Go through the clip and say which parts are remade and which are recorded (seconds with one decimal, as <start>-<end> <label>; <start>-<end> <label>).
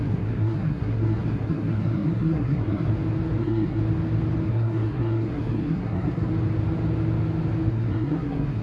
0.0-2.9 remade; 2.9-3.4 recorded; 3.4-3.8 remade; 3.8-4.5 recorded; 4.5-6.3 remade; 6.3-7.7 recorded; 7.7-8.6 remade